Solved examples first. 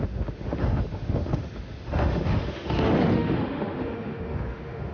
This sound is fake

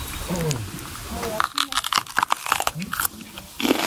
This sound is real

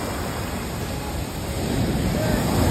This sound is real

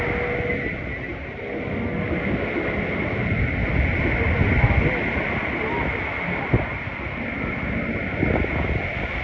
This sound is real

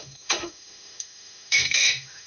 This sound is fake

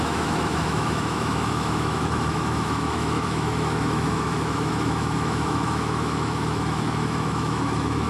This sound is fake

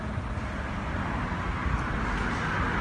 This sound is real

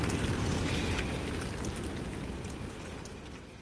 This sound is real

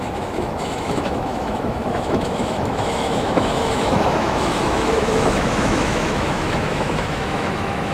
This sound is fake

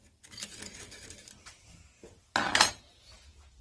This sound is real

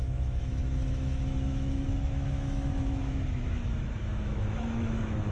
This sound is fake